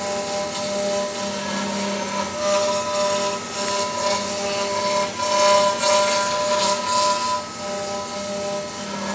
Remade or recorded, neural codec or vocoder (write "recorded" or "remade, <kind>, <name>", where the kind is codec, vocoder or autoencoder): recorded